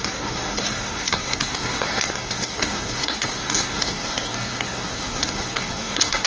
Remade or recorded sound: remade